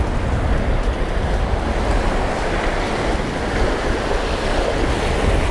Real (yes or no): yes